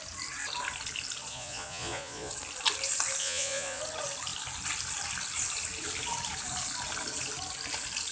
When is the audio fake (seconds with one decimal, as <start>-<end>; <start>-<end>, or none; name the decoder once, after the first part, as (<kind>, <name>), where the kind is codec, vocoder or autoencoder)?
1.3-2.3 (vocoder, Vocos); 3.2-3.8